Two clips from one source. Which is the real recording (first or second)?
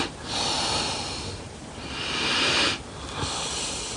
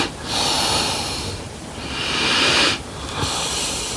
first